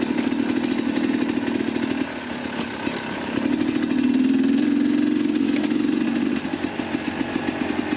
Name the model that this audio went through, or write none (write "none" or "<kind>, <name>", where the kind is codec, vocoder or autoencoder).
none